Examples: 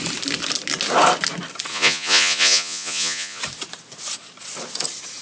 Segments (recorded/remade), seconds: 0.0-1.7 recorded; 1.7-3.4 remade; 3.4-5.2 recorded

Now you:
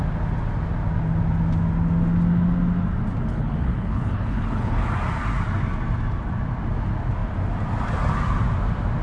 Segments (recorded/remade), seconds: 0.0-3.3 recorded; 3.3-4.9 remade; 4.9-9.0 recorded

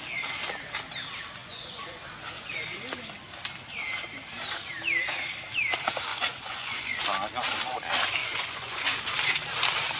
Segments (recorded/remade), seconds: 0.0-1.4 recorded; 1.4-2.0 remade; 2.0-6.1 recorded; 6.1-7.0 remade; 7.0-8.2 recorded; 8.2-9.0 remade; 9.0-10.0 recorded

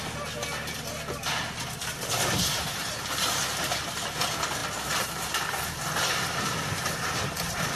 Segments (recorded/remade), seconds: 0.0-7.8 recorded